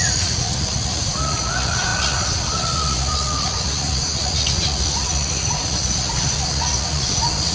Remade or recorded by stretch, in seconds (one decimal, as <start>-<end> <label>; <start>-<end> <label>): 0.0-7.5 remade